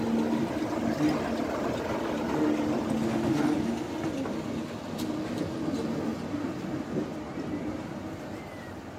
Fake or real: real